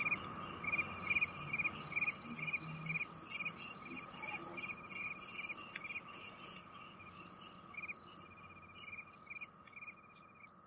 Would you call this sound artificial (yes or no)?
no